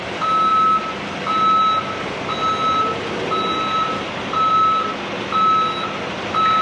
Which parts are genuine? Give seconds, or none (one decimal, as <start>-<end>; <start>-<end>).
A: 0.0-6.6